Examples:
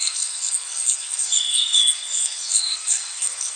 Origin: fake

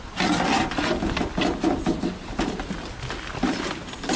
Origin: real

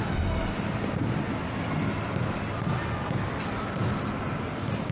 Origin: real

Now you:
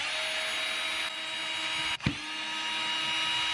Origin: real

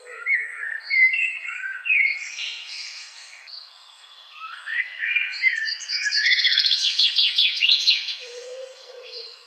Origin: fake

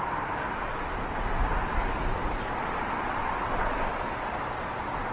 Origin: real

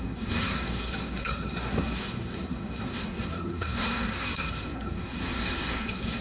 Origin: fake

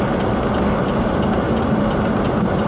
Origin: real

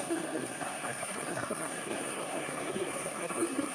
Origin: fake